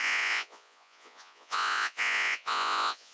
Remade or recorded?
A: remade